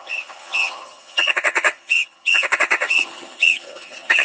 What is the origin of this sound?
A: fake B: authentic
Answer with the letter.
A